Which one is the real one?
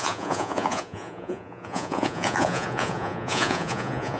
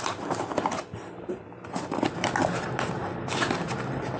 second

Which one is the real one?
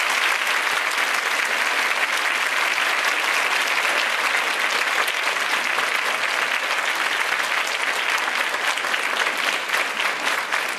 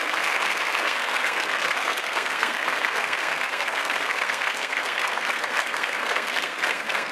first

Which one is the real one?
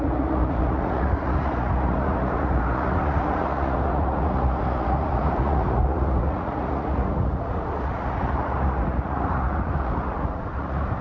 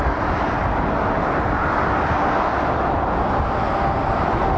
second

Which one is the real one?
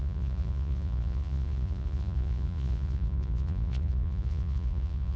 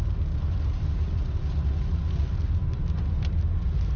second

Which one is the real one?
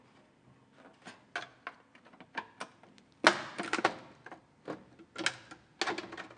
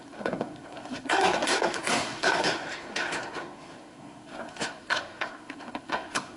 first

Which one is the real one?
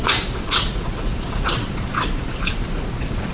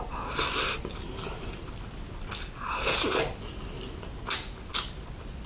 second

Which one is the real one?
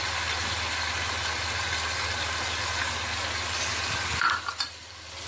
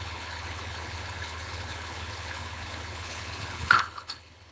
first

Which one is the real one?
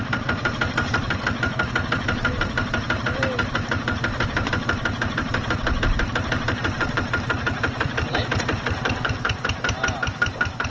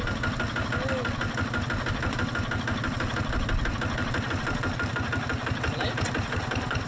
second